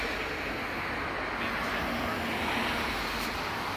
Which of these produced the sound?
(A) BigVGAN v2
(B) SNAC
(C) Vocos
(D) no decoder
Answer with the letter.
D